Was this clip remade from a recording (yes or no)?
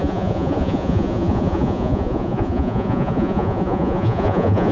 yes